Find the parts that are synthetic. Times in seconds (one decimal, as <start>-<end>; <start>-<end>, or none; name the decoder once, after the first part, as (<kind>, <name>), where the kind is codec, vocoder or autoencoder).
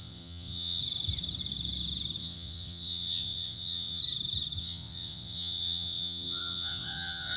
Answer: 0.0-0.8 (vocoder, WaveNeXt); 2.2-4.0; 4.6-7.4